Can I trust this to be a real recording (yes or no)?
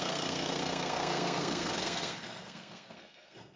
no